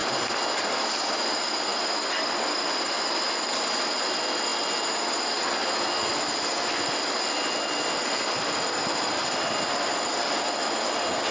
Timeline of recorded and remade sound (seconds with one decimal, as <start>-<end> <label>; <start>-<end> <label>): 0.0-11.3 recorded